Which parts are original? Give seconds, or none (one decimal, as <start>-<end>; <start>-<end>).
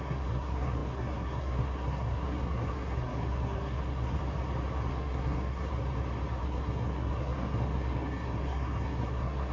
4.2-4.9; 5.7-6.4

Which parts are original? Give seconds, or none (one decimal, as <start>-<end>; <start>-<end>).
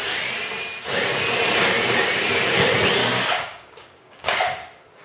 0.0-3.0; 4.3-5.0